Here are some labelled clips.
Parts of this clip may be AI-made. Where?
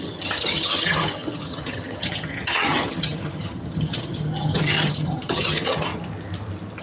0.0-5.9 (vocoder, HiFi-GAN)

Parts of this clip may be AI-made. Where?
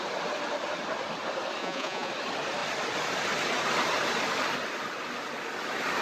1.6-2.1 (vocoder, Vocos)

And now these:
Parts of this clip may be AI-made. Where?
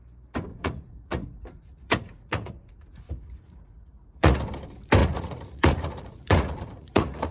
0.5-4.4 (vocoder, Vocos); 5.0-7.3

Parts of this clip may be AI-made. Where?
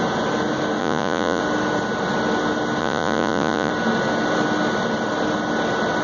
0.8-1.4 (vocoder, Vocos); 2.8-3.7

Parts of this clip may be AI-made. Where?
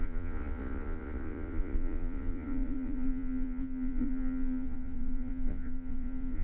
0.0-6.4 (vocoder, Vocos)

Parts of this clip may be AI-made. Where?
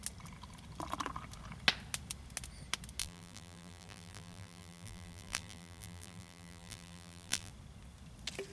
3.0-7.5 (vocoder, BigVGAN v2)